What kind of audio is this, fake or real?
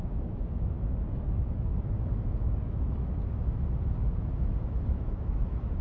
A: fake